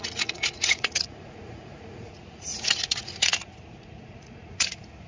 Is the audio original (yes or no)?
no